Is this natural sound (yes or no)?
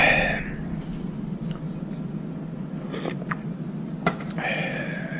yes